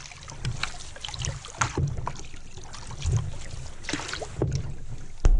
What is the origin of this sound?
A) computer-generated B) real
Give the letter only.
B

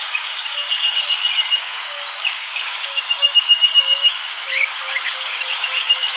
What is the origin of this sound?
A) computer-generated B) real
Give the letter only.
A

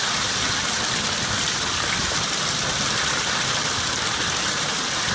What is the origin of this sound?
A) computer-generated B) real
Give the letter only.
B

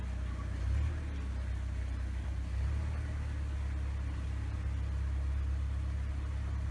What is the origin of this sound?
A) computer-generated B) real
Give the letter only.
B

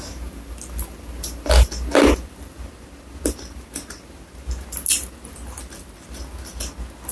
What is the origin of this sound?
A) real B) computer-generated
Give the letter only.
A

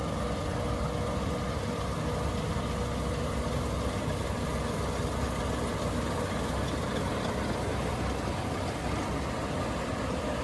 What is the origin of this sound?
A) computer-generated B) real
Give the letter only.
B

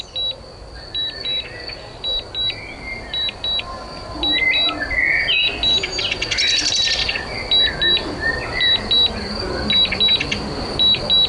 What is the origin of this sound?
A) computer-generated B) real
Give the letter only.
B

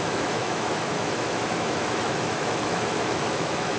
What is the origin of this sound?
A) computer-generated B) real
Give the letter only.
A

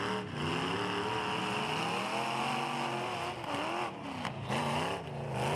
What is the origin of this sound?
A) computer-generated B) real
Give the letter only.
B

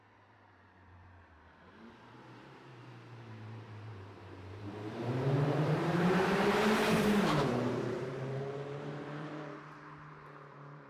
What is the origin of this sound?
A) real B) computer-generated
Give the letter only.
B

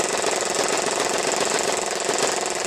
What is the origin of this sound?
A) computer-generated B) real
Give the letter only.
B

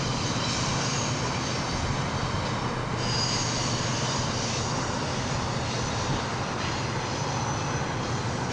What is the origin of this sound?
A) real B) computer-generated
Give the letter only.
A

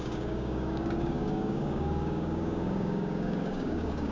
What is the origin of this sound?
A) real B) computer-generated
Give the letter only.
B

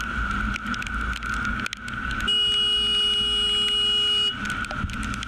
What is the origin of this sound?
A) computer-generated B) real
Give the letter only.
B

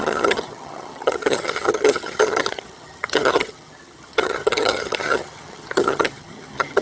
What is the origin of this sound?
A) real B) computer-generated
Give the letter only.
B